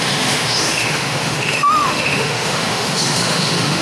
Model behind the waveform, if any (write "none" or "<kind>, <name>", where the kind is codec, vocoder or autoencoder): autoencoder, DAC-VAE